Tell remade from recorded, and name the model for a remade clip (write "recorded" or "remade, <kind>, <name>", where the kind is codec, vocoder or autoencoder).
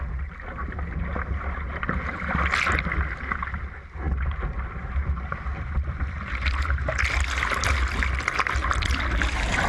recorded